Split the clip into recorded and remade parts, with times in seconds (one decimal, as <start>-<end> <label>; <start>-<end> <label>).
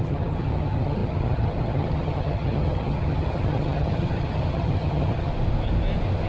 0.0-5.3 remade; 5.3-6.3 recorded